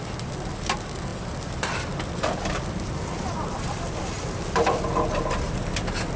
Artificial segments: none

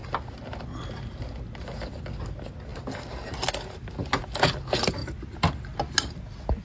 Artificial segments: none

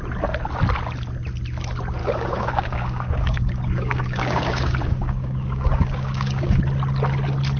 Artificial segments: 2.0-6.6

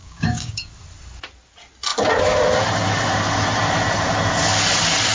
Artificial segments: 0.0-0.7

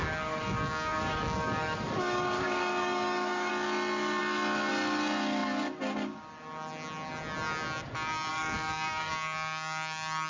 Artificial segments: 0.0-3.5; 8.3-9.1